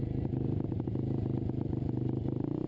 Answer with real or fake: real